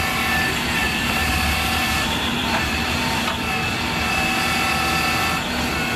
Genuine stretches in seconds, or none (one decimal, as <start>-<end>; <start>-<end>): 0.0-0.8; 3.3-6.0